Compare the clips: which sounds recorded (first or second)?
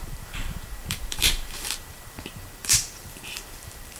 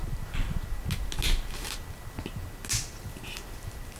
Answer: second